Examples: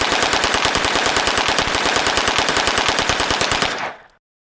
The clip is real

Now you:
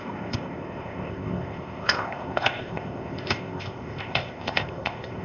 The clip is fake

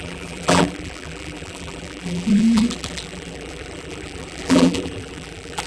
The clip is fake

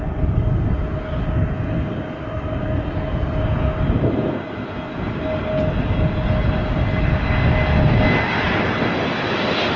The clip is real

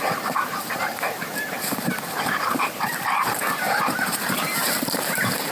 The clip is fake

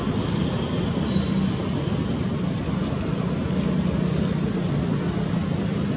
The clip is real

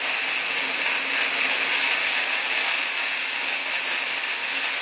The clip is real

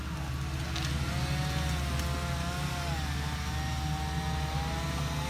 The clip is real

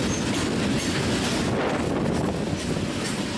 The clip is real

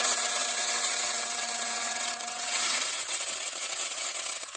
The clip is fake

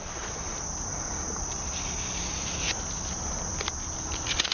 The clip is real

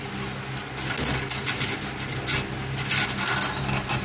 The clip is real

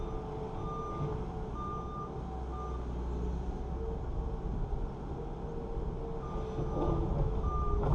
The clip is real